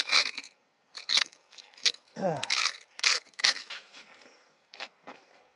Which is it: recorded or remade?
remade